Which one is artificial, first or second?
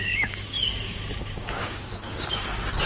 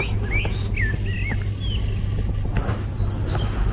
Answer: first